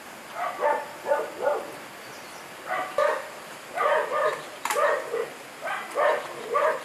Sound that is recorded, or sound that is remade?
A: recorded